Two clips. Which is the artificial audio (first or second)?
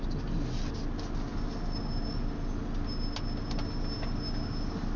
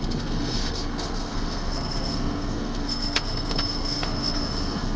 second